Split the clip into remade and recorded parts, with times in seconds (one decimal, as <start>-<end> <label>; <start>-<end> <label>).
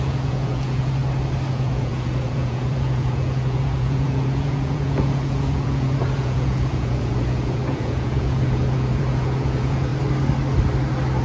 0.0-1.0 remade; 1.0-1.5 recorded; 1.5-9.9 remade; 9.9-11.2 recorded